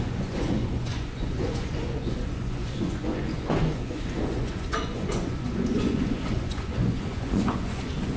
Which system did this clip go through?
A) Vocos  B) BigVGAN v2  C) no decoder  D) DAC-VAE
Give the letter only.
A